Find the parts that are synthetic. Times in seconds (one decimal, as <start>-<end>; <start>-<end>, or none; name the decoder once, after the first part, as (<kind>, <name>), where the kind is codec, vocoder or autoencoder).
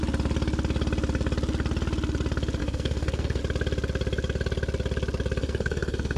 2.6-3.4 (codec, SNAC); 5.4-6.2